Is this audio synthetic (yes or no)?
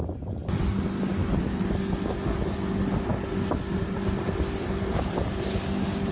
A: no